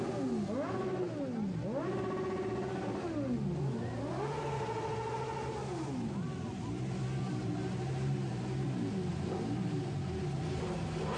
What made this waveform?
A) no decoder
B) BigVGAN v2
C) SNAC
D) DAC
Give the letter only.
A